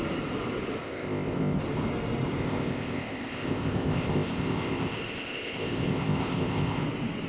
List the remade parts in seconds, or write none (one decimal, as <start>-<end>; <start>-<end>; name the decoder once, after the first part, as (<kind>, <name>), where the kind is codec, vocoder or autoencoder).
0.8-1.6 (codec, ZipCodec); 2.4-6.8